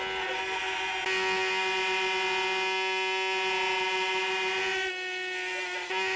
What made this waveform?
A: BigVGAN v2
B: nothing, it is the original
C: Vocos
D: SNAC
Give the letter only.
B